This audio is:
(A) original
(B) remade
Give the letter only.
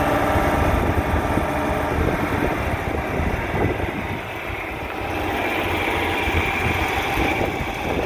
A